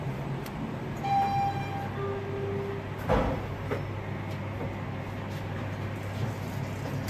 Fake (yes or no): no